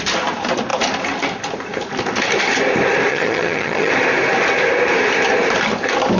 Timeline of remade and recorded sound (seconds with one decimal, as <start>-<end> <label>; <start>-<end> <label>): 0.0-3.1 recorded; 3.1-3.9 remade; 3.9-6.2 recorded